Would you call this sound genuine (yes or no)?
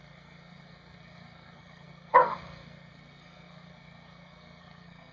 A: no